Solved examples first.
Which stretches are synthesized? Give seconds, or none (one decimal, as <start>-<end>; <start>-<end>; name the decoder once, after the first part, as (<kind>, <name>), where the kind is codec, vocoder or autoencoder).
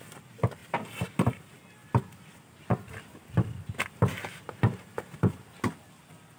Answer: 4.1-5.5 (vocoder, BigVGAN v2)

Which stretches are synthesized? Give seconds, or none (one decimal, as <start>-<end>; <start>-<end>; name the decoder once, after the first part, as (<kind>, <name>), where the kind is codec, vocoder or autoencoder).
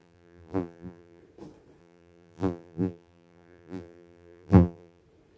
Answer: 0.0-1.2 (vocoder, BigVGAN v2); 1.8-5.0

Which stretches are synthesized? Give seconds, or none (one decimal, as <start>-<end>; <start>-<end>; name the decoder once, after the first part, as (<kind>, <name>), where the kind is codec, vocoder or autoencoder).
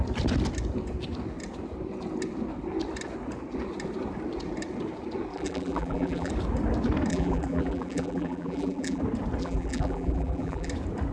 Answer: 5.3-6.3 (vocoder, BigVGAN v2); 7.1-9.0; 9.4-10.7